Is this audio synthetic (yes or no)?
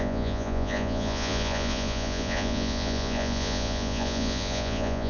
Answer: yes